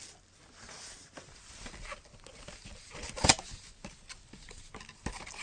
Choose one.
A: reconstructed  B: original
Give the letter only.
B